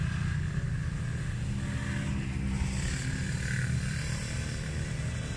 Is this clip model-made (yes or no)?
no